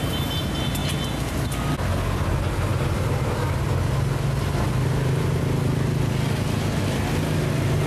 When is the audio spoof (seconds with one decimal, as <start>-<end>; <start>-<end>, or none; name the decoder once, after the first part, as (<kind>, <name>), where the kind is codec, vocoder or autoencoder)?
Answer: none

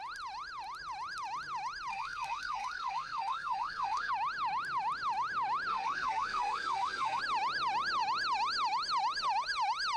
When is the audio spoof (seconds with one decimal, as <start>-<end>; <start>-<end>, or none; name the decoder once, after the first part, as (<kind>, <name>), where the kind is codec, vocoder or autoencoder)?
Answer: 1.9-4.1 (codec, SNAC); 5.7-7.2

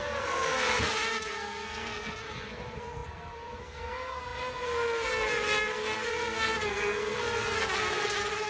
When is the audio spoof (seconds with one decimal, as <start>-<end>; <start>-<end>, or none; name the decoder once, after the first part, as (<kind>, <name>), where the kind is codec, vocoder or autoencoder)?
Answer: 0.0-8.5 (codec, SNAC)